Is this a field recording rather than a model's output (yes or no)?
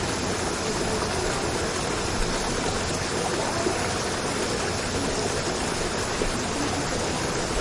yes